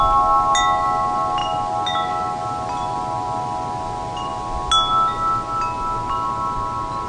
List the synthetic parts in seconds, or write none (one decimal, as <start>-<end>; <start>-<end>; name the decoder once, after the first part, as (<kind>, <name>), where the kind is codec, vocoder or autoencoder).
none